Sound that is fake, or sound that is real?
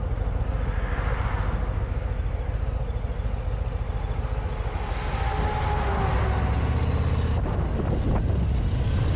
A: real